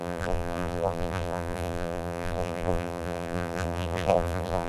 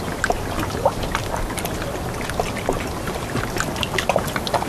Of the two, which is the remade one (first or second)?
first